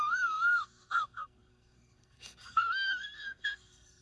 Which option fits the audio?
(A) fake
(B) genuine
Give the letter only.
A